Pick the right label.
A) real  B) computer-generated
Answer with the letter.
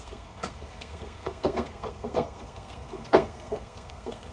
B